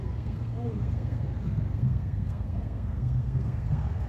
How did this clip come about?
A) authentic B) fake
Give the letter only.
B